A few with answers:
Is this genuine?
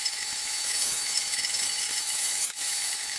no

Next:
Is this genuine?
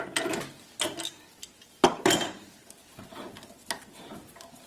yes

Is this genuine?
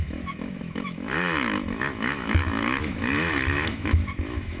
no